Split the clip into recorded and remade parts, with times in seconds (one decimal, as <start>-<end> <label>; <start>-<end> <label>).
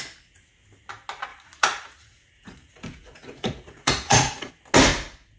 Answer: 0.0-1.3 recorded; 1.3-4.5 remade; 4.5-5.4 recorded